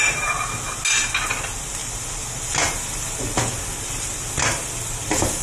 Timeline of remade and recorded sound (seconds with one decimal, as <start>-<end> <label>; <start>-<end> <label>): 0.0-5.4 recorded